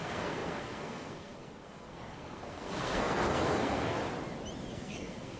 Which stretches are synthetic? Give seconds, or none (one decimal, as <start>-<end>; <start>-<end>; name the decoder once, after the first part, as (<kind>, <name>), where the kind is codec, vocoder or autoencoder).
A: 0.0-4.0 (codec, SNAC); 4.7-5.4